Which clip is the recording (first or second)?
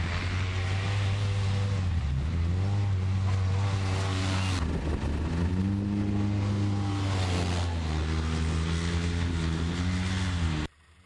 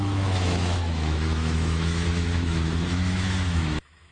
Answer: first